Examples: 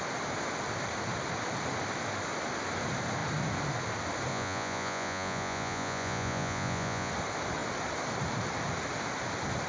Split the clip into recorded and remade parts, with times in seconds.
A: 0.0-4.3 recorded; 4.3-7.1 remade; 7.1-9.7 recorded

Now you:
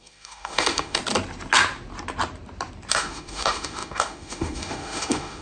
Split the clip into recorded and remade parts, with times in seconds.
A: 0.0-1.0 remade; 1.0-2.9 recorded; 2.9-5.4 remade

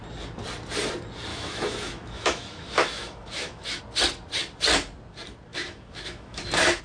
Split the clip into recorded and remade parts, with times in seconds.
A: 0.0-1.3 recorded; 1.3-3.8 remade; 3.8-5.5 recorded; 5.5-6.8 remade

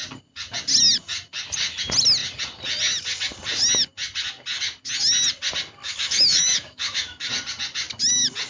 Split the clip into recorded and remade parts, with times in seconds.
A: 0.0-5.8 recorded; 5.8-7.3 remade; 7.3-8.5 recorded